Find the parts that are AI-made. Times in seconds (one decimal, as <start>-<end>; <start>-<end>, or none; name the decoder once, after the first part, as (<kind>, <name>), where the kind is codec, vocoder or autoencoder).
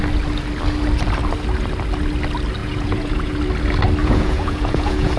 2.6-3.4 (vocoder, Vocos); 4.0-5.2